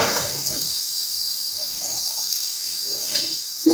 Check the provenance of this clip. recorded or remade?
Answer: remade